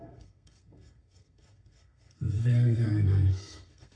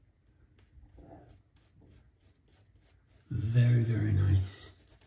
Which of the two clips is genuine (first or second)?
second